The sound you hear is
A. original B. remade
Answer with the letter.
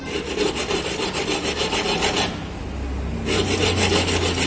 A